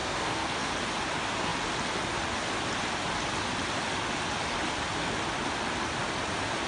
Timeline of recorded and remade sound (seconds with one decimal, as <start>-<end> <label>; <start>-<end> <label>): 0.0-0.7 remade; 0.7-6.7 recorded